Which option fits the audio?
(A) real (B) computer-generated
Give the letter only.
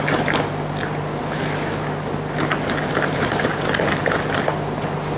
A